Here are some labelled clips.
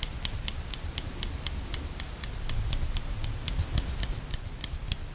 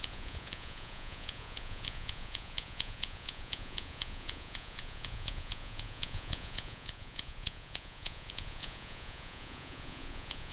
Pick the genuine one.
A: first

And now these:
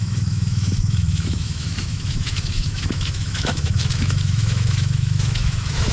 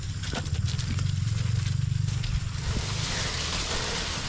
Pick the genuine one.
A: second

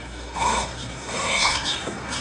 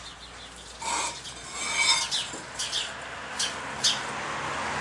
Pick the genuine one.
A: second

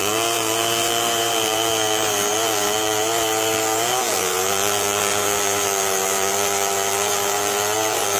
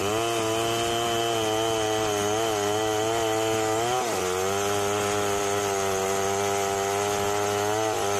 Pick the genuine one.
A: second